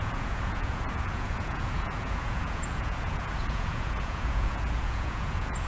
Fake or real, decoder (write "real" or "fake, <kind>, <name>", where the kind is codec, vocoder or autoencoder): fake, vocoder, Vocos